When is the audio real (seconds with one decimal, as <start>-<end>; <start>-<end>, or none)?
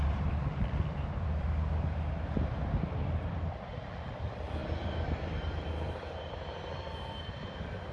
none